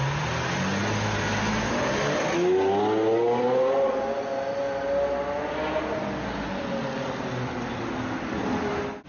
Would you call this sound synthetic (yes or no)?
no